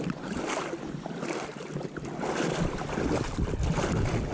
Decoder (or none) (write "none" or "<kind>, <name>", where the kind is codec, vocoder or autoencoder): none